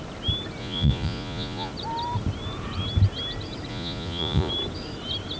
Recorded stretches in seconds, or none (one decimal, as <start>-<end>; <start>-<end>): 0.0-0.6; 1.7-3.7; 4.5-5.4